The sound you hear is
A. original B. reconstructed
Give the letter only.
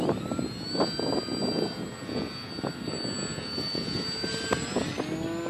A